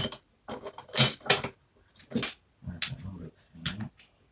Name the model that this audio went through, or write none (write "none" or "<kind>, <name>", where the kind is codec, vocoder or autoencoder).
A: none